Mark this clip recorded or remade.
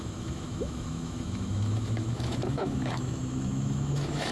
remade